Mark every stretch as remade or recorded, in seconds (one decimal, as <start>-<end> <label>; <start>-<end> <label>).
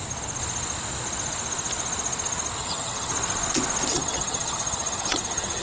0.0-2.6 recorded; 2.6-3.1 remade; 3.1-3.9 recorded; 3.9-5.6 remade